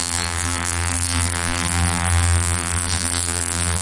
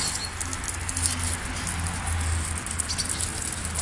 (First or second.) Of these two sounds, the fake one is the first